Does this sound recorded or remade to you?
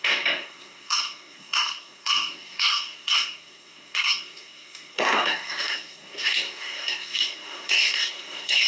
remade